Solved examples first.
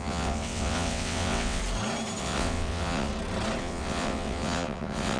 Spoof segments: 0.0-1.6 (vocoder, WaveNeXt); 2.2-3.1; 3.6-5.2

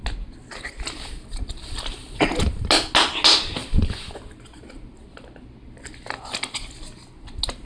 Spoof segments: none

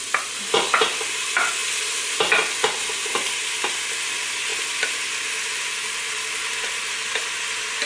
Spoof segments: none